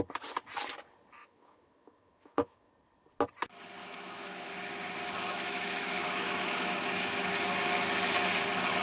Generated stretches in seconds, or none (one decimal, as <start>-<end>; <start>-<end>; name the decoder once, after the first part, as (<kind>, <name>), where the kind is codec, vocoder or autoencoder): 1.2-2.7 (autoencoder, DAC-VAE); 3.8-4.5; 5.3-7.3

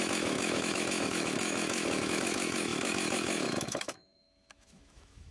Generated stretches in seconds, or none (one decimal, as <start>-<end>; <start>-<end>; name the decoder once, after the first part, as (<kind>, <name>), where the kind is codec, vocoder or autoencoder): 0.0-5.3 (autoencoder, DAC-VAE)

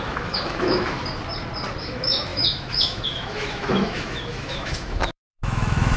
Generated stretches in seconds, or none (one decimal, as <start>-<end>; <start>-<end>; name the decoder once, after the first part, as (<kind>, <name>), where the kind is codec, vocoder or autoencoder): 0.0-1.0 (autoencoder, DAC-VAE); 1.8-6.0

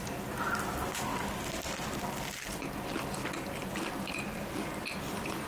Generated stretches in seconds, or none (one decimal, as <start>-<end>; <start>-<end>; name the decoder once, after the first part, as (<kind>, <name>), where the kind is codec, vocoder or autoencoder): none

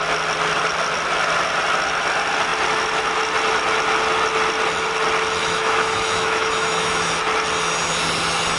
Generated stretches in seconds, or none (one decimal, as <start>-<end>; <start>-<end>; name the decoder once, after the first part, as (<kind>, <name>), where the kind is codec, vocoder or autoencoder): 5.4-7.1 (autoencoder, DAC-VAE)

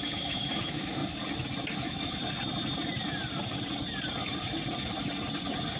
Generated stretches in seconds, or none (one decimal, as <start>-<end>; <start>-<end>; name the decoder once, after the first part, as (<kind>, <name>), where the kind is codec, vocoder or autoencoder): 0.0-1.0 (autoencoder, DAC-VAE); 1.8-2.2